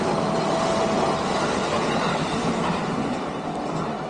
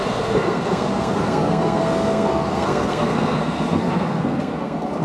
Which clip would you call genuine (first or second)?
first